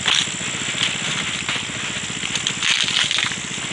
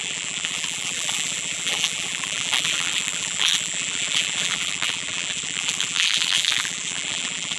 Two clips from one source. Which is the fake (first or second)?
second